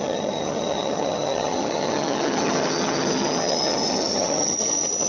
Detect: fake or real fake